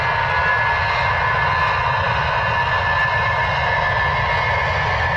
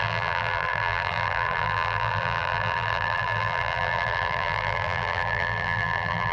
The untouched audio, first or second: first